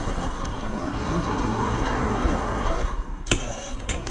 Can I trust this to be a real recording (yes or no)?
no